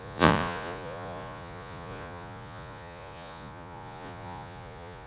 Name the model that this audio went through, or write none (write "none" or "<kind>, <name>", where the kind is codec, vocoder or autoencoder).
vocoder, Vocos